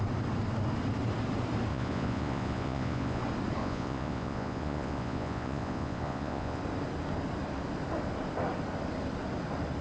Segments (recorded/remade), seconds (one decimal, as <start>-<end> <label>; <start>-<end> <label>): 0.0-1.7 recorded; 1.7-3.2 remade; 3.2-3.6 recorded; 3.6-6.6 remade; 6.6-9.8 recorded